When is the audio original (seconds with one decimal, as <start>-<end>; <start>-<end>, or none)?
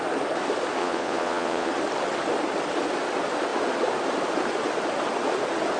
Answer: 0.0-0.8; 1.7-5.8